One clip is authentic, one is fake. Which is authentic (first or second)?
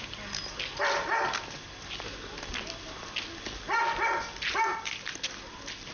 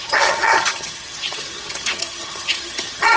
first